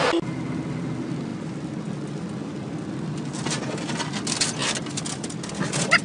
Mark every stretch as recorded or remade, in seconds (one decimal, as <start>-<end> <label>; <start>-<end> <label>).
0.0-6.0 recorded